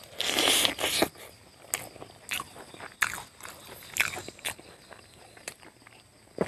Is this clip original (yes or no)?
yes